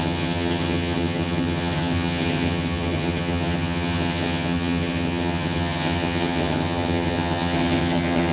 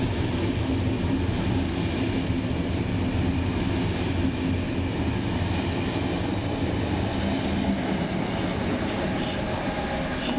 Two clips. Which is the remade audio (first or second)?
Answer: first